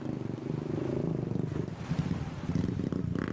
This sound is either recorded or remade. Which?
recorded